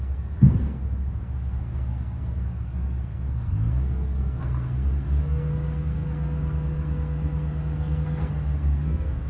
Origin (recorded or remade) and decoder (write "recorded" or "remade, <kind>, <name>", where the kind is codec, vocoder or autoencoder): remade, codec, SNAC